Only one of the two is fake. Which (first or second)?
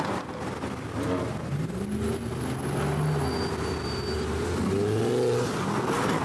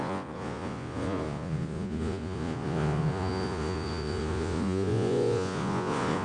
second